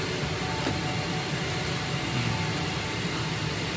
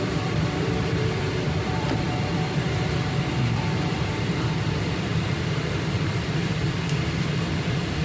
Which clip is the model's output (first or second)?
second